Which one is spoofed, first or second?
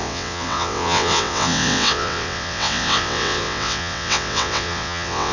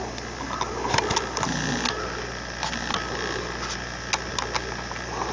first